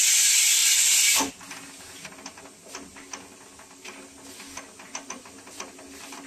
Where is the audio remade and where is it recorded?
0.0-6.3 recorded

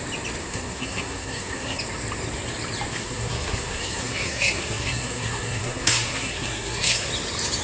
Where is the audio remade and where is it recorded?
0.0-0.4 recorded; 0.4-1.8 remade; 1.8-2.9 recorded; 2.9-7.1 remade; 7.1-7.6 recorded